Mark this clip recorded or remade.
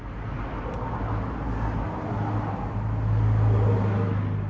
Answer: recorded